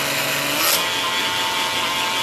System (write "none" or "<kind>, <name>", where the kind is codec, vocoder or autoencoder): none